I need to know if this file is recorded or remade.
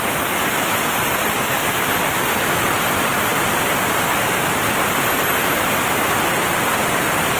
recorded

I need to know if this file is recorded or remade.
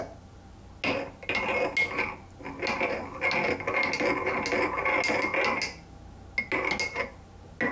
recorded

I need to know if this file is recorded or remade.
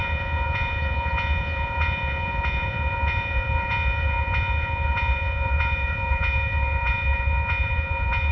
remade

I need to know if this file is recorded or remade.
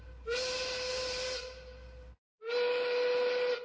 recorded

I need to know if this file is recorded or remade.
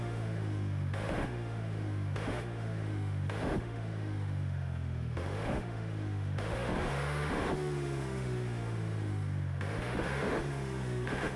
remade